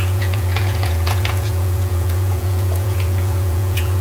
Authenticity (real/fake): fake